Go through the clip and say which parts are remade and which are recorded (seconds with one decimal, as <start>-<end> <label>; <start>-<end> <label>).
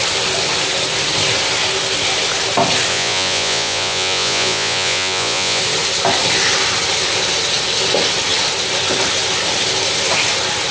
0.0-2.9 recorded; 2.9-5.6 remade; 5.6-10.7 recorded